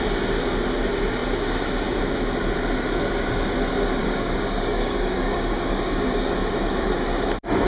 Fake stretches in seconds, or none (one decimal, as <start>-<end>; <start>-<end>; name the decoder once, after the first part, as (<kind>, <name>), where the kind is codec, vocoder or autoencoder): 4.0-6.9 (codec, DAC)